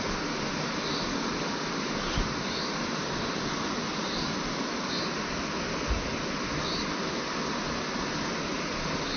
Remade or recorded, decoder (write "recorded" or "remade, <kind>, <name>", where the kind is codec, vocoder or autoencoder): recorded